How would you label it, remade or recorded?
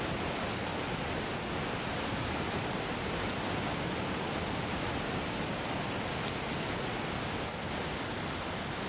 recorded